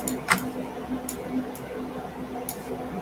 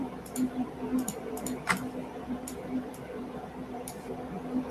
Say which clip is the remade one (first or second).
second